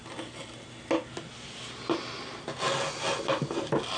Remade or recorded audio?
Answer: recorded